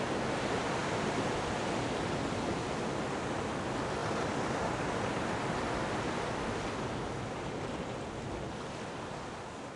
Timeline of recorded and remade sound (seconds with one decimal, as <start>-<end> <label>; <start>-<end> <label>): 0.0-0.8 recorded; 0.8-1.6 remade; 1.6-9.8 recorded